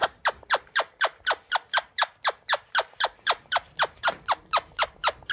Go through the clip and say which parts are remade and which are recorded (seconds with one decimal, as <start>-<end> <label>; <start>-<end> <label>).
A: 0.0-5.3 remade